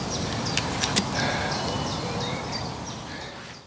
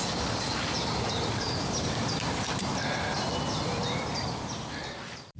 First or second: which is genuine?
first